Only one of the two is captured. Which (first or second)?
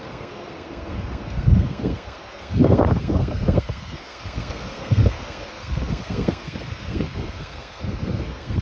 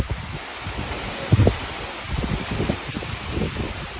second